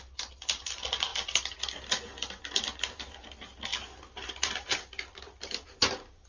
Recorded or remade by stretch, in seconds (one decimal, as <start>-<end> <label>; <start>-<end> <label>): 0.0-6.3 recorded